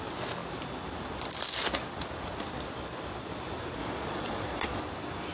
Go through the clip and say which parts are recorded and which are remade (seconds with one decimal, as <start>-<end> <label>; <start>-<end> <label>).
0.0-3.8 recorded; 3.8-4.8 remade; 4.8-5.3 recorded

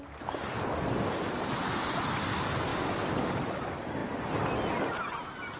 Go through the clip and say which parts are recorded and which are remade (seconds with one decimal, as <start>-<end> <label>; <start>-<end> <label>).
0.0-5.6 recorded

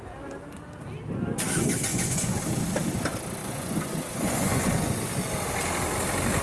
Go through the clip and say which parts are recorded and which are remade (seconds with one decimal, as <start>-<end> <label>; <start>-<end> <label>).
0.0-1.9 recorded; 1.9-2.4 remade; 2.4-3.4 recorded; 3.4-4.7 remade; 4.7-6.4 recorded

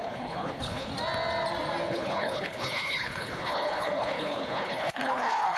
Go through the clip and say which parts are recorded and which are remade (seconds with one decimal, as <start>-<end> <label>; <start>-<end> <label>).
0.0-0.9 remade; 0.9-1.9 recorded; 1.9-5.6 remade

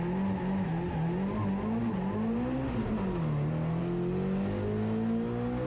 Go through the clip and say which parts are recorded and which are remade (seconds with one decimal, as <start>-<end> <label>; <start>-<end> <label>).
0.0-5.7 recorded

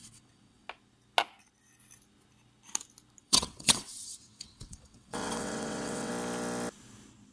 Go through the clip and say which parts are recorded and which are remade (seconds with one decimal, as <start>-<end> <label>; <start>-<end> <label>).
0.0-0.7 remade; 0.7-3.2 recorded; 3.2-6.1 remade; 6.1-7.3 recorded